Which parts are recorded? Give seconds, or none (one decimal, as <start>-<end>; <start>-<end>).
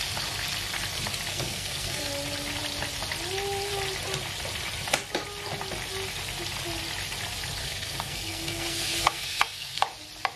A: 0.0-1.3; 2.1-7.6; 9.8-10.4